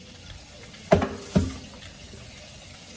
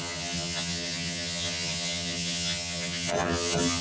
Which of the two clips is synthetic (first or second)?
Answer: second